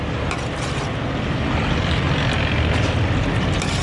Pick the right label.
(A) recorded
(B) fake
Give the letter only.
A